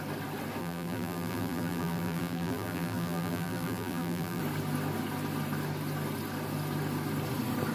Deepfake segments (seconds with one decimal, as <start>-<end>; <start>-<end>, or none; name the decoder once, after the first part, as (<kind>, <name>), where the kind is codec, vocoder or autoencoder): 0.6-4.4 (vocoder, BigVGAN v2)